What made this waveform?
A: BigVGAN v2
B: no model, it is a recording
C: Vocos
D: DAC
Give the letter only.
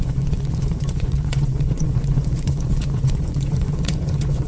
C